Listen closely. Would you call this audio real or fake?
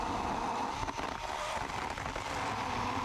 real